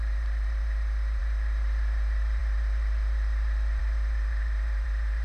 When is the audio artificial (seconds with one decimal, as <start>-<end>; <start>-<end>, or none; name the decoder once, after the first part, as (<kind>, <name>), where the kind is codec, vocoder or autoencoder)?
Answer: 0.0-5.2 (vocoder, BigVGAN v2)